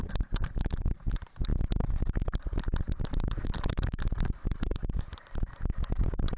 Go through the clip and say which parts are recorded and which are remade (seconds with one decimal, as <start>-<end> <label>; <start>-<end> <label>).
0.0-1.5 remade; 1.5-2.8 recorded; 2.8-6.4 remade